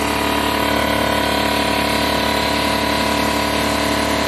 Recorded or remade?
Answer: recorded